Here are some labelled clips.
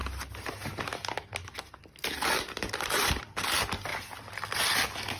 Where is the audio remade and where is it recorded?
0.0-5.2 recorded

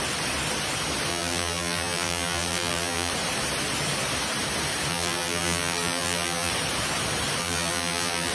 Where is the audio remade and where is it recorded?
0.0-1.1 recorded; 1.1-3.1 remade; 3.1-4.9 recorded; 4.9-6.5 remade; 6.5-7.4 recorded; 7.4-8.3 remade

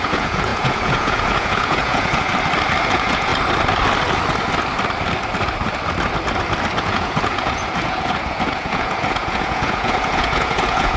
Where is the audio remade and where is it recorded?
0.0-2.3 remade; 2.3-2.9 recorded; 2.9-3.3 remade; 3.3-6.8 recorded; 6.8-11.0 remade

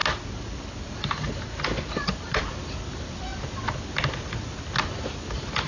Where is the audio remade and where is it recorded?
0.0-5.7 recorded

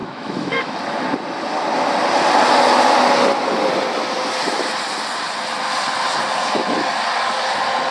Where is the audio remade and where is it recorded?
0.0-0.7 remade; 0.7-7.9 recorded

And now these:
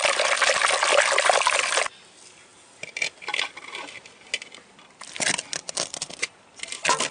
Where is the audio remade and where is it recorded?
0.0-7.1 recorded

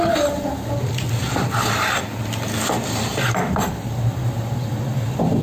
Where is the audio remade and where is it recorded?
0.0-2.1 recorded; 2.1-4.0 remade; 4.0-5.4 recorded